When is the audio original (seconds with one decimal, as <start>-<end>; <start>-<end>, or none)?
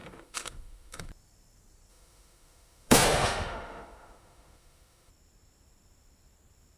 1.1-1.9; 5.1-6.8